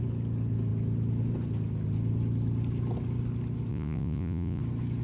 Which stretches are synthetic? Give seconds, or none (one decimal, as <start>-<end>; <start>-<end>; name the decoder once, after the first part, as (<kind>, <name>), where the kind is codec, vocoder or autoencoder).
3.7-4.6 (vocoder, Vocos)